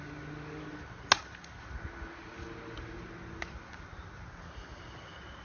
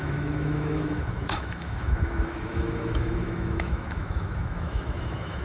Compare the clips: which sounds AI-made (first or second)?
second